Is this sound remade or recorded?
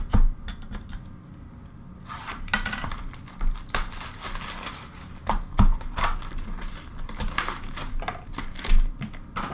recorded